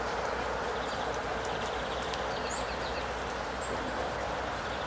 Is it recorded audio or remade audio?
remade